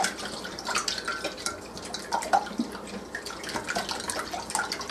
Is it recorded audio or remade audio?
recorded